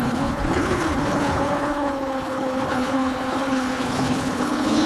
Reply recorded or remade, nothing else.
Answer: remade